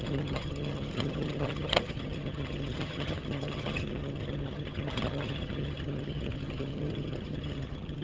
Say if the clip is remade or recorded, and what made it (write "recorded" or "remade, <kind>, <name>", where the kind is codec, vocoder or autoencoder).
remade, vocoder, HiFi-GAN